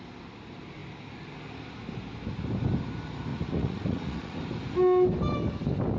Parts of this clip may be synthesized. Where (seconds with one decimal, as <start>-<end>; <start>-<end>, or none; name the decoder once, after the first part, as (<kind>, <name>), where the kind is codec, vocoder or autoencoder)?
3.3-4.4 (vocoder, Vocos)